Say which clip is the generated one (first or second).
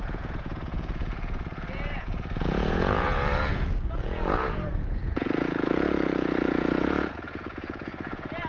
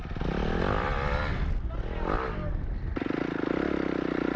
first